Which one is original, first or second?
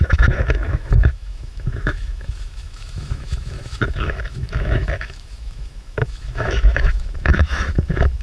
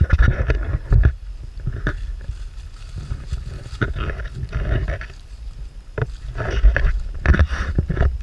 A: second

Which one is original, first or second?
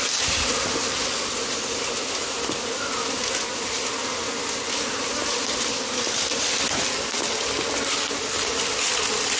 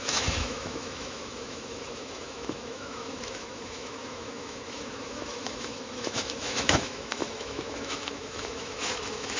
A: first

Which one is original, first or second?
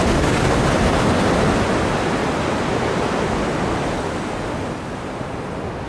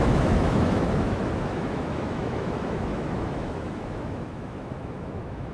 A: first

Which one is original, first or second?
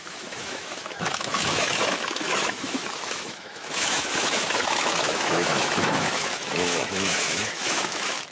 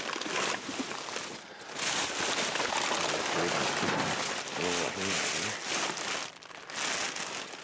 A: second